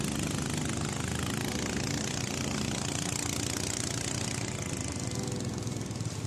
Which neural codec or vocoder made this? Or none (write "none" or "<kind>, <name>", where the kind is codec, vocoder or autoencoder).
none